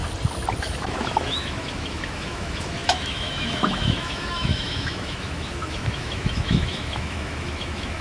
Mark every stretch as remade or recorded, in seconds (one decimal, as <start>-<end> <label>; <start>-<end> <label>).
0.0-0.6 recorded; 0.6-8.0 remade